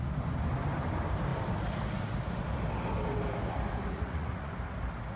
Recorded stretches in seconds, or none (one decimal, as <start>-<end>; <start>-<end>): 0.0-3.9; 4.5-5.2